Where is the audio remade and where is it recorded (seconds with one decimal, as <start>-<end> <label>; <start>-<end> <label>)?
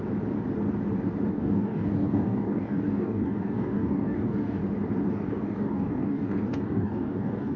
0.0-1.3 recorded; 1.3-4.6 remade; 4.6-5.1 recorded; 5.1-7.6 remade